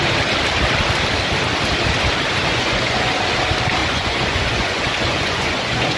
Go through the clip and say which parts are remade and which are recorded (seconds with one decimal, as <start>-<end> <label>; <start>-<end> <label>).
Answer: 0.0-2.5 recorded; 2.5-3.1 remade; 3.1-3.8 recorded; 3.8-6.0 remade